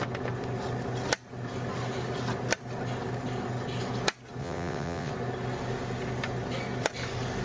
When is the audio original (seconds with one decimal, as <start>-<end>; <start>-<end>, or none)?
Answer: 0.0-4.4; 5.1-7.4